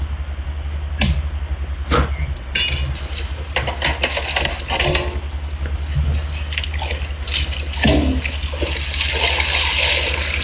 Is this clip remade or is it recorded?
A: recorded